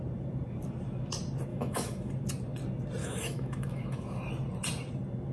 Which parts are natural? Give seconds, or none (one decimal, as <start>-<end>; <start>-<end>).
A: 0.0-1.5; 2.1-3.0; 4.2-5.3